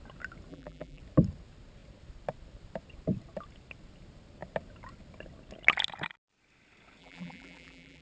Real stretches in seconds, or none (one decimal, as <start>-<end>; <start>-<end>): 0.0-0.5; 1.0-7.0